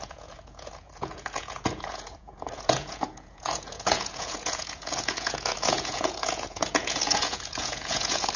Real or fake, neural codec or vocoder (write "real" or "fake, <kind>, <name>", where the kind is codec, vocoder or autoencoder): fake, vocoder, Vocos